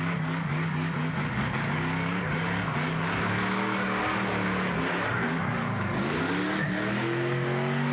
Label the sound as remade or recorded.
remade